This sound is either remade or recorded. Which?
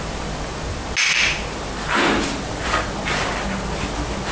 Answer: recorded